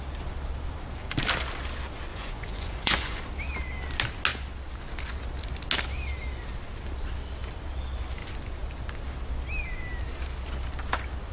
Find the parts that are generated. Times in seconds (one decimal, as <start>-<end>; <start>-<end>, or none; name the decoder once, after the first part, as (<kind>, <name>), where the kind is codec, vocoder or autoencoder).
2.1-3.2 (vocoder, Vocos)